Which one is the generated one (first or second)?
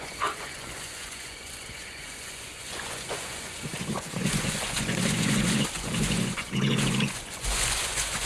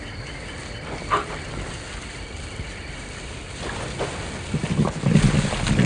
first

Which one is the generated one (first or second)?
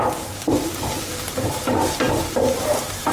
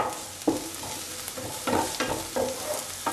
first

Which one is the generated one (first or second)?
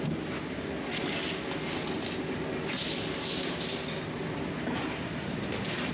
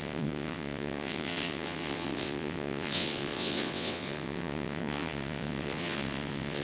second